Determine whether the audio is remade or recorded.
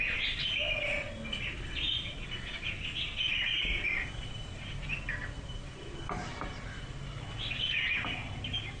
recorded